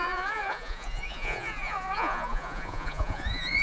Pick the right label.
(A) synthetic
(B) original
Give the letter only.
A